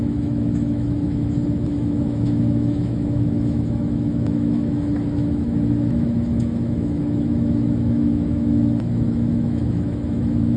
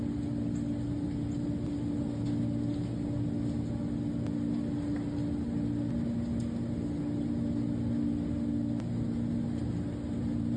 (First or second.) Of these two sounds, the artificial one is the first